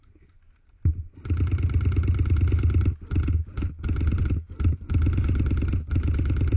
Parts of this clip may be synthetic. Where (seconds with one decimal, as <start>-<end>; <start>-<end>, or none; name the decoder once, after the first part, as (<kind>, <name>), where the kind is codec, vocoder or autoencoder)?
none